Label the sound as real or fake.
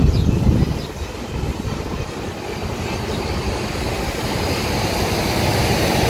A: real